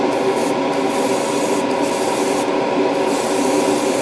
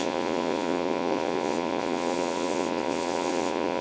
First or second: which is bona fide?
first